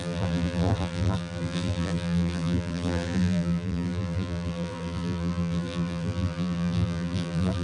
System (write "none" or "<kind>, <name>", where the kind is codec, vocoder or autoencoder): vocoder, BigVGAN v2